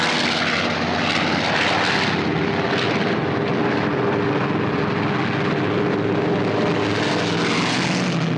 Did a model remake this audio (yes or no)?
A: no